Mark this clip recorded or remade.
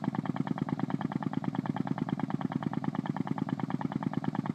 recorded